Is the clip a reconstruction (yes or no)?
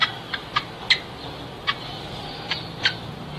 no